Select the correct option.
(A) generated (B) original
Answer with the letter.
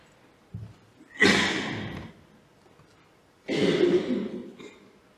B